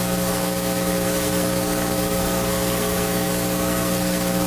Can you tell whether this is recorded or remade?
remade